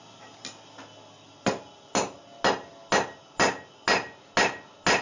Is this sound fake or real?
real